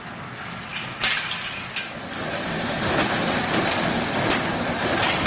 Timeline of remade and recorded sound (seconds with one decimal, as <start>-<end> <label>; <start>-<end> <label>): 0.0-0.7 recorded; 0.7-1.9 remade; 1.9-5.3 recorded